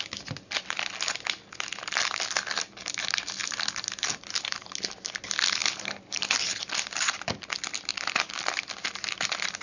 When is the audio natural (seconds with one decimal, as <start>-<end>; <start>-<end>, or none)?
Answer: 0.0-9.6